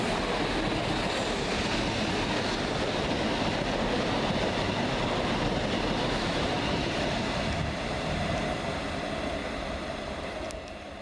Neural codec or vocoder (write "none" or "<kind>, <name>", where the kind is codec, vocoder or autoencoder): none